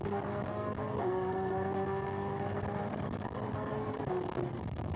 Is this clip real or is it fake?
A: fake